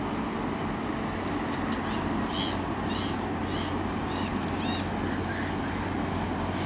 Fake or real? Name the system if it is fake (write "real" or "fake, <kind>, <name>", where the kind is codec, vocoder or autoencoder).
real